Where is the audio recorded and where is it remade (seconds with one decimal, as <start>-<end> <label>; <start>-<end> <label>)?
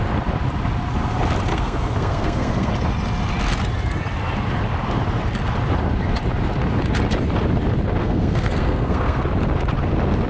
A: 0.0-1.5 recorded; 1.5-2.7 remade; 2.7-8.0 recorded; 8.0-9.2 remade; 9.2-10.3 recorded